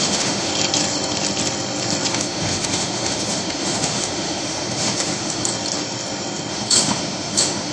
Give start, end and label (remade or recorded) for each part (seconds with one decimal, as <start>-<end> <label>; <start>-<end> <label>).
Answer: 0.0-0.5 remade; 0.5-2.1 recorded; 2.1-5.5 remade; 5.5-6.5 recorded; 6.5-7.7 remade